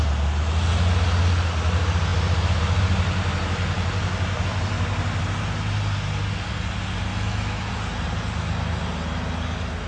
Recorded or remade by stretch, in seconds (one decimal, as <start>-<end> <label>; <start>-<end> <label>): 0.0-7.1 recorded; 7.1-7.7 remade; 7.7-9.9 recorded

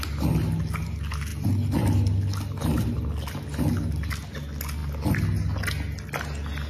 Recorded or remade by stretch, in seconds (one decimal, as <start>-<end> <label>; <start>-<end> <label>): 0.0-6.7 recorded

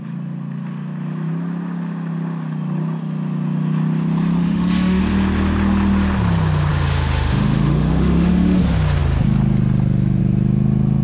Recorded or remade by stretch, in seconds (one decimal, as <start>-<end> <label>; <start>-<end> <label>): 0.0-4.4 recorded; 4.4-5.0 remade; 5.0-6.7 recorded; 6.7-8.6 remade; 8.6-11.0 recorded